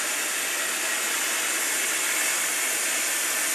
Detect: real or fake real